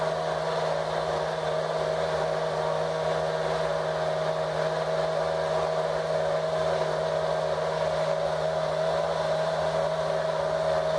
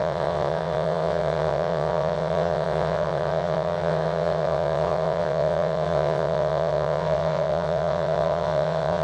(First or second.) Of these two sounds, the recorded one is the first